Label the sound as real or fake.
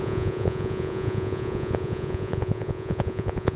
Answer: fake